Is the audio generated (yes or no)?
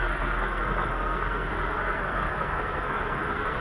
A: yes